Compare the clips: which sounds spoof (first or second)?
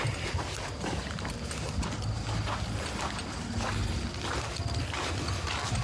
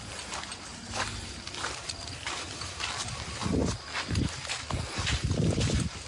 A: second